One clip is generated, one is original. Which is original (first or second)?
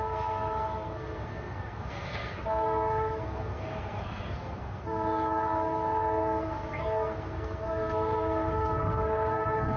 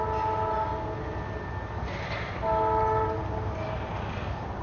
second